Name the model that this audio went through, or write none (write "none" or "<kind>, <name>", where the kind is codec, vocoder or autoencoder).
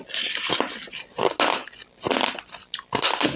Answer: none